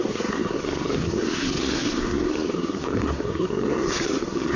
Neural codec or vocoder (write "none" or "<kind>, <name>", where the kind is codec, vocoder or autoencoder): codec, SNAC